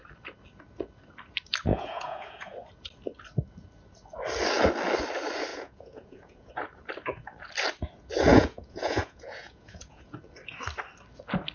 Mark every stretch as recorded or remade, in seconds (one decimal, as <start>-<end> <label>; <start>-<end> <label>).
0.0-1.7 recorded; 1.7-2.7 remade; 2.7-5.5 recorded; 5.5-6.5 remade; 6.5-8.3 recorded; 8.3-10.1 remade; 10.1-11.5 recorded